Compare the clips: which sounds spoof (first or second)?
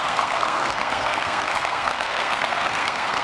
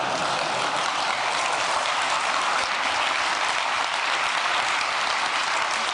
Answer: first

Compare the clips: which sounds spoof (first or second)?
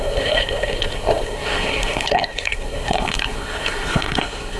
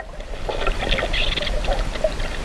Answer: first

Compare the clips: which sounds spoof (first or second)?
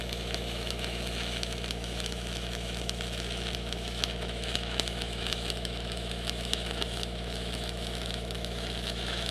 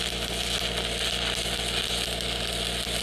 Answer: first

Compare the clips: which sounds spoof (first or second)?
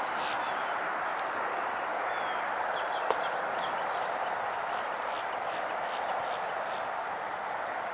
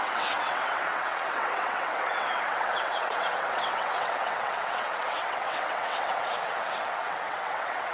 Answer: second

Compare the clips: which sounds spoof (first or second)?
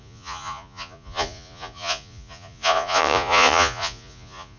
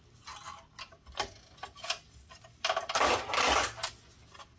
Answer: first